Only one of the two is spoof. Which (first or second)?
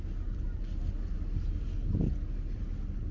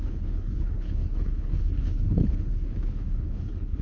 second